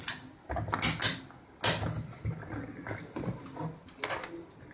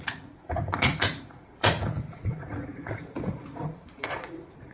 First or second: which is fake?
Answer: second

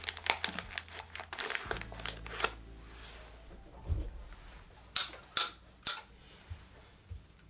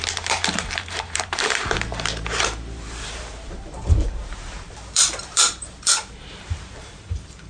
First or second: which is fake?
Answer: second